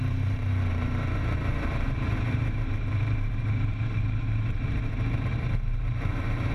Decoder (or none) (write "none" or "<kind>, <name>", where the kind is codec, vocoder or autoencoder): vocoder, BigVGAN v2